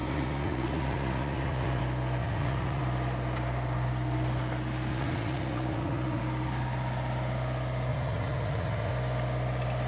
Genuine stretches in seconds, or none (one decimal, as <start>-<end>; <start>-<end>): 1.8-2.2; 2.8-4.9; 6.2-7.9; 8.9-9.9